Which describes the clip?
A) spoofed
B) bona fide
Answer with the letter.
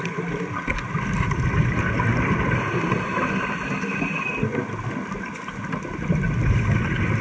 B